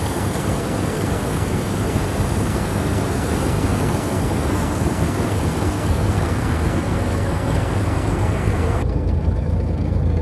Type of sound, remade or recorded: remade